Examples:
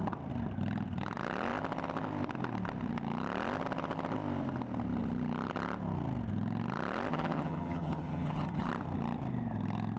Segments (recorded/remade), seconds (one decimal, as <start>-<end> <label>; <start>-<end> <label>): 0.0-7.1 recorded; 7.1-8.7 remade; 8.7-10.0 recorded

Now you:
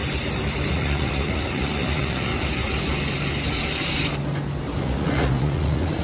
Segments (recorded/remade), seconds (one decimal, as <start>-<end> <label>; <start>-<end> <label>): 0.0-0.7 recorded; 0.7-2.3 remade; 2.3-4.8 recorded; 4.8-6.0 remade

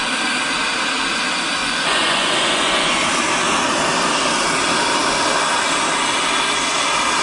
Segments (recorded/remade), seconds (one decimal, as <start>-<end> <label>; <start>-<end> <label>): 0.0-1.6 recorded; 1.6-3.0 remade; 3.0-7.2 recorded